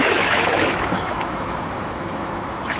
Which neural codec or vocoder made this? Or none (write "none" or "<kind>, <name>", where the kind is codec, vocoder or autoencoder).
autoencoder, DAC-VAE